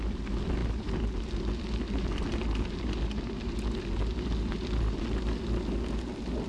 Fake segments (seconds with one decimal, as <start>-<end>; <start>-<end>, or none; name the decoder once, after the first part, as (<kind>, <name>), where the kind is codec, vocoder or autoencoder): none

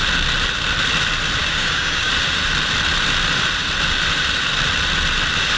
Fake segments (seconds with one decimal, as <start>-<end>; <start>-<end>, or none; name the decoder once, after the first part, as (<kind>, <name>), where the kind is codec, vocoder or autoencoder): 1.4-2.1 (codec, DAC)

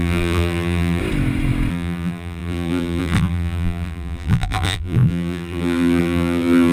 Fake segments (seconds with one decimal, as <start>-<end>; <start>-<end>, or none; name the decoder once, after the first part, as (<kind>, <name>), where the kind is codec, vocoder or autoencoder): 0.0-1.0 (vocoder, BigVGAN v2); 1.7-6.7

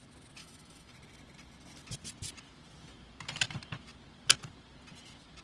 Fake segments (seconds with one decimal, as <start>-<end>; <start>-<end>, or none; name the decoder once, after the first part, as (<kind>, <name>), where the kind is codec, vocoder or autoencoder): 0.4-0.9 (autoencoder, DAC-VAE)

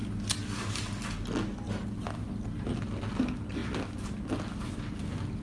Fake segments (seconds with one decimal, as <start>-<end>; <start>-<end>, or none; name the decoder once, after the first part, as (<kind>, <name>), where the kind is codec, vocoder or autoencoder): none

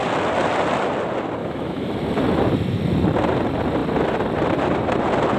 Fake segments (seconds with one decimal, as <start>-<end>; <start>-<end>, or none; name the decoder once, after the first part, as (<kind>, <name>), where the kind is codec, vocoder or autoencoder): 1.4-1.9 (autoencoder, DAC-VAE)

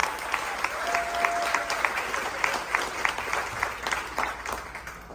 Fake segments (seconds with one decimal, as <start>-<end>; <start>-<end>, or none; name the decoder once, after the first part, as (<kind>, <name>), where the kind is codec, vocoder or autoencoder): none

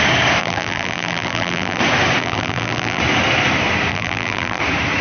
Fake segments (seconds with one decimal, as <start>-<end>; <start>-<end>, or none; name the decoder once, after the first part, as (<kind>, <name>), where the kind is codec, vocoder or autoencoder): 0.4-1.8 (vocoder, BigVGAN v2); 2.2-3.0; 3.9-4.6